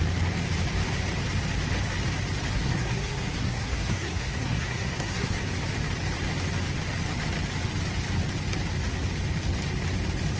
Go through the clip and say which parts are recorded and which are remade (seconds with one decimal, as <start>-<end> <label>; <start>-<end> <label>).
0.0-2.5 recorded; 2.5-5.4 remade; 5.4-10.4 recorded

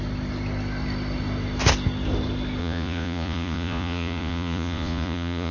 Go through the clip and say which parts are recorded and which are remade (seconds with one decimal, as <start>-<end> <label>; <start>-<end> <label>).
0.0-2.6 recorded; 2.6-5.5 remade

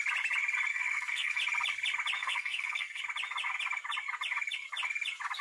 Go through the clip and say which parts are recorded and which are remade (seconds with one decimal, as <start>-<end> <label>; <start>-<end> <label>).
0.0-0.7 recorded; 0.7-1.4 remade; 1.4-2.2 recorded; 2.2-3.0 remade; 3.0-5.4 recorded

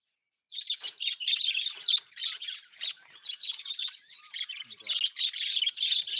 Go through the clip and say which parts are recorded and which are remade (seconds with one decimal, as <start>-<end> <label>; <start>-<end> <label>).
0.0-6.2 recorded